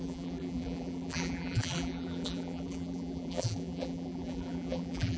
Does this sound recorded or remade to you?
remade